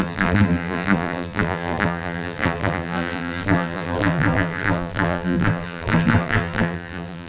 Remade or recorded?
remade